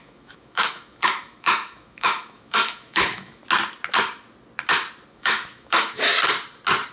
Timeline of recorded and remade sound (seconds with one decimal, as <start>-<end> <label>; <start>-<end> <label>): 0.0-3.4 remade; 3.4-5.1 recorded; 5.1-6.1 remade; 6.1-6.9 recorded